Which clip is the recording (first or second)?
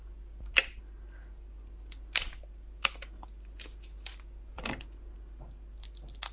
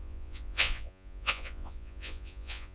first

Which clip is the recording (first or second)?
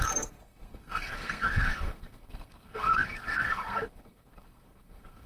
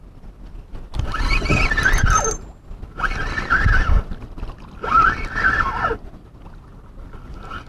second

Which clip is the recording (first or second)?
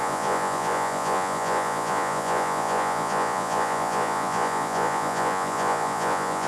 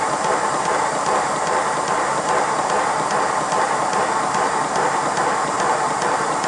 second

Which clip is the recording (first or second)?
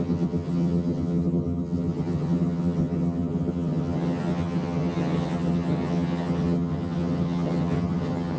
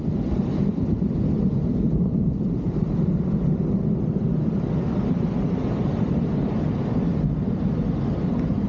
second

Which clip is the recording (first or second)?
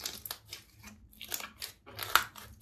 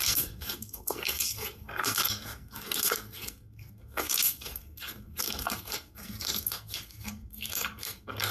first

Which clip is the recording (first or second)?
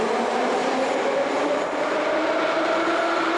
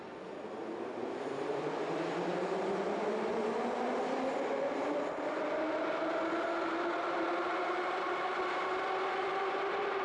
second